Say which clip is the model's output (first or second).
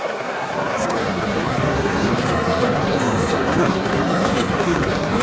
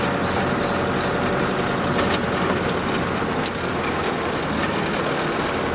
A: first